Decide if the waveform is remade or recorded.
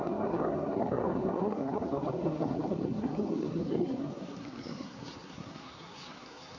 remade